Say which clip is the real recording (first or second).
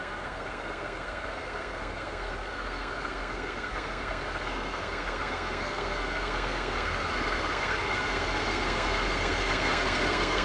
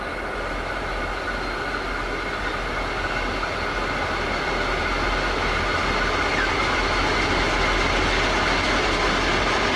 second